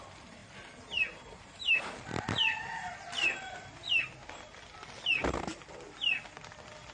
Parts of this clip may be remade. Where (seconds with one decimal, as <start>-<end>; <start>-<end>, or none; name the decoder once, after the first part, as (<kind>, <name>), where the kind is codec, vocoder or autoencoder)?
none